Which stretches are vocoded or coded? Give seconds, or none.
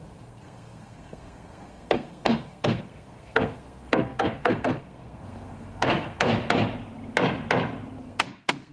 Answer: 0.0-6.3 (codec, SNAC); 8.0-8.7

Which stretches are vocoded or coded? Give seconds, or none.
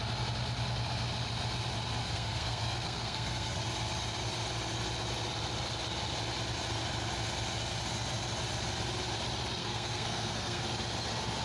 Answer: 2.0-3.6 (codec, SNAC); 9.6-10.6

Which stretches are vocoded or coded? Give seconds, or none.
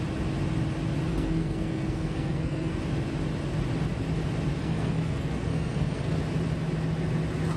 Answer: 1.1-2.8 (codec, SNAC); 4.6-6.2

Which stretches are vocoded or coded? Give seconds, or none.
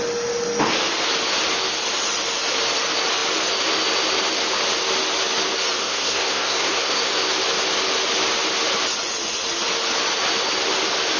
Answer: 5.8-7.1 (codec, SNAC)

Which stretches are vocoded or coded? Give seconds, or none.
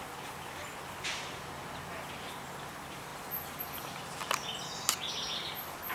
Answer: none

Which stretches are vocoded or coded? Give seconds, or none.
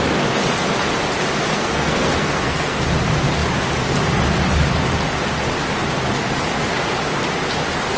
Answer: 1.5-2.8 (codec, SNAC)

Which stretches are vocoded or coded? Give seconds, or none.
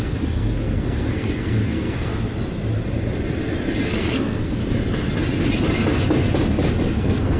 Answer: 0.0-2.1 (codec, SNAC); 3.8-4.6; 6.7-7.4